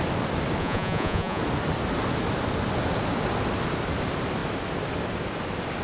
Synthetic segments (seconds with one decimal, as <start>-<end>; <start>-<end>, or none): 0.6-1.4